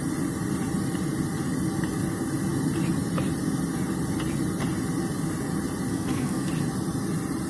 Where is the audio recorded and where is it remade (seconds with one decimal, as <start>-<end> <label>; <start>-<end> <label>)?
0.0-5.9 recorded; 5.9-6.5 remade; 6.5-7.5 recorded

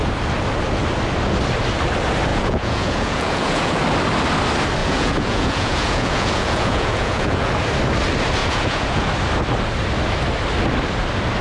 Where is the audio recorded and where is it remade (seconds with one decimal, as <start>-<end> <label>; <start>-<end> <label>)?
0.0-2.3 recorded; 2.3-3.8 remade; 3.8-4.8 recorded; 4.8-7.5 remade; 7.5-8.4 recorded; 8.4-9.1 remade; 9.1-11.4 recorded

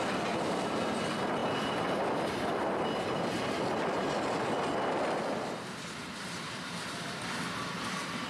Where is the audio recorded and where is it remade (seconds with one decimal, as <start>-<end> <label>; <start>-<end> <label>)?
0.0-8.3 recorded